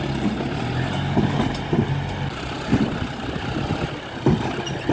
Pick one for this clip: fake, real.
real